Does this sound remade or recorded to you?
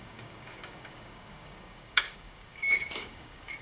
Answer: remade